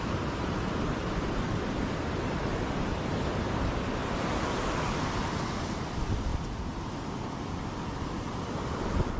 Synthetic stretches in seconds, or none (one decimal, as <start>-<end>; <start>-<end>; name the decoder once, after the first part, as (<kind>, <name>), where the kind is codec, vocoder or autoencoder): 0.0-6.3 (vocoder, BigVGAN v2); 8.7-9.2